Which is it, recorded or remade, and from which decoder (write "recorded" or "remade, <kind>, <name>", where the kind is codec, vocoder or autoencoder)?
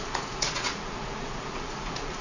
remade, vocoder, Vocos